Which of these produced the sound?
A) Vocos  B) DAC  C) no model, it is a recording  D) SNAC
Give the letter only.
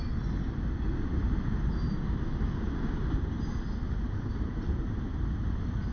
C